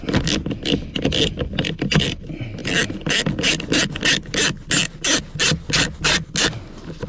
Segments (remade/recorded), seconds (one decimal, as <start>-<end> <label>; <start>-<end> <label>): 0.0-7.1 recorded